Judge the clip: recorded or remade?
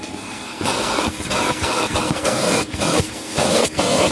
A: remade